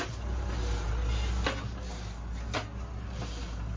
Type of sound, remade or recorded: recorded